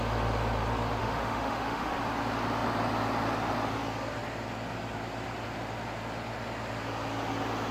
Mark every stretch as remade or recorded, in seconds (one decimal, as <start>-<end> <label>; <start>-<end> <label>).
0.0-1.0 recorded; 1.0-2.0 remade; 2.0-7.7 recorded